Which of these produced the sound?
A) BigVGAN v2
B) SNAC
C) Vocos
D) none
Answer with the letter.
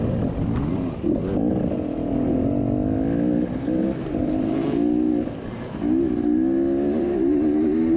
D